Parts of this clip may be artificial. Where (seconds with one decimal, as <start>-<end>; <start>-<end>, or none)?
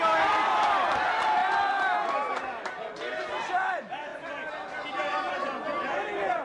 none